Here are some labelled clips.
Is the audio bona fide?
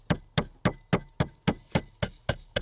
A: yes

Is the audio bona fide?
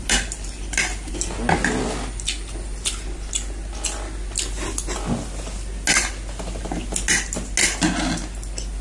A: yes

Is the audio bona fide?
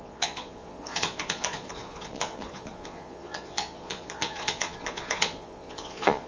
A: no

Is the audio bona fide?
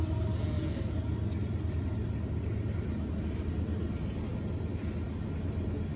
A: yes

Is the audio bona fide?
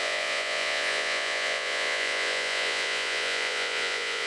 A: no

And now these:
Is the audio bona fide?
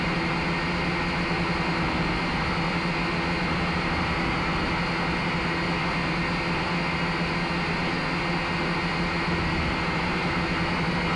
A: yes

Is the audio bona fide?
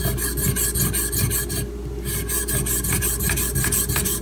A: yes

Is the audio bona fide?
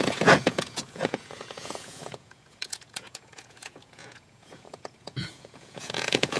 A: no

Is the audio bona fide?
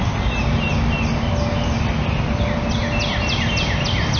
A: yes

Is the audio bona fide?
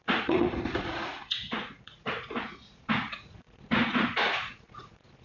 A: no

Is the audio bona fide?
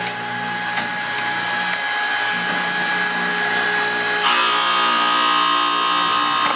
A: yes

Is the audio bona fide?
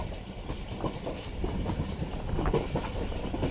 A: yes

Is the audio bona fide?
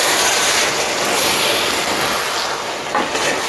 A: yes